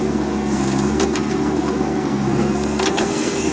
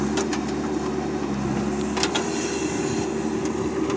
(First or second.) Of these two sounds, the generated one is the first